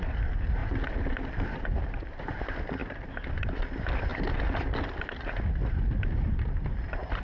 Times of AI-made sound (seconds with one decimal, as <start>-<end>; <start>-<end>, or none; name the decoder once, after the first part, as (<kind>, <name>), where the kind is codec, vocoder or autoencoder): 2.8-3.6 (vocoder, BigVGAN v2)